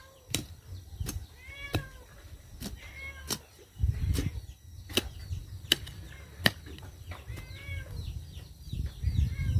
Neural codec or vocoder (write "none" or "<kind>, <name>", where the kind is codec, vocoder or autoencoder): vocoder, BigVGAN v2